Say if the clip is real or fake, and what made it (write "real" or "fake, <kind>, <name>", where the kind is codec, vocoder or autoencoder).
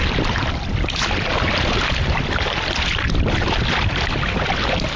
fake, vocoder, BigVGAN v2